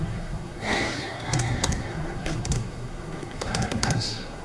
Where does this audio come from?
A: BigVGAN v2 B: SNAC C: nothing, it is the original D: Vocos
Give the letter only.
B